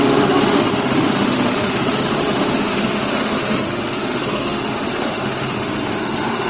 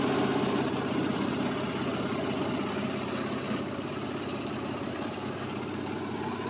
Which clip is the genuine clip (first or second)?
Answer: second